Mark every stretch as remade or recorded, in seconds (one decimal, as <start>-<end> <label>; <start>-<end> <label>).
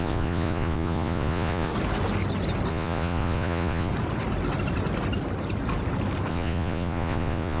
0.0-1.7 remade; 1.7-2.7 recorded; 2.7-3.9 remade; 3.9-6.3 recorded; 6.3-7.6 remade